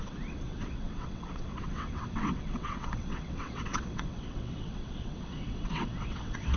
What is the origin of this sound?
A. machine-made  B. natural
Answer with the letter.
A